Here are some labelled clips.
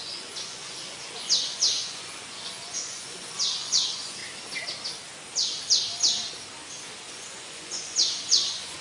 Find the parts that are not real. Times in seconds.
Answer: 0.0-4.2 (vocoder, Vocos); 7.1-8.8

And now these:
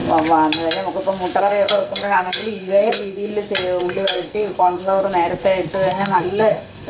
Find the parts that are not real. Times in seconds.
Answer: 1.4-3.3 (codec, SNAC); 3.8-5.0; 5.9-6.9

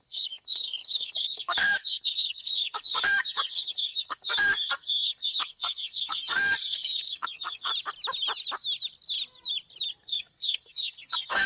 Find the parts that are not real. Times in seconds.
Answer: 0.0-7.7 (codec, SNAC); 9.9-11.5

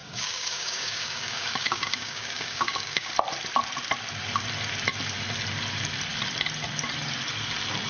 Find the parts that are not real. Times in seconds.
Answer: 0.0-3.1 (codec, DAC)

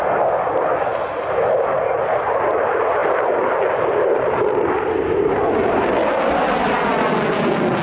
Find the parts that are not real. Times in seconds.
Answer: none

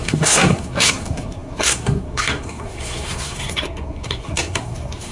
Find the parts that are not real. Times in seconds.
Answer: 0.0-5.1 (codec, SNAC)

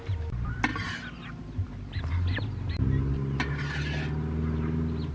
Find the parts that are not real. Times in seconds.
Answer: none

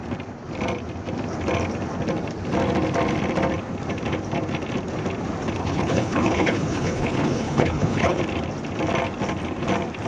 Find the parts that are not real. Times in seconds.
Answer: 5.6-8.2 (codec, HILCodec)